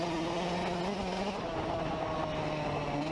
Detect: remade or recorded recorded